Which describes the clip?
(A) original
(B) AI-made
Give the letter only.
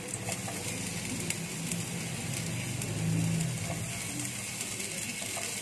A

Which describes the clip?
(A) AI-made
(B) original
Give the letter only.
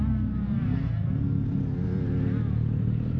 B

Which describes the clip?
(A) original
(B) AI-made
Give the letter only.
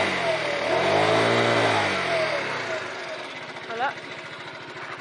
A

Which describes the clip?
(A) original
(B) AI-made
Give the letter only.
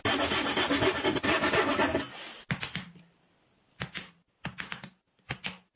A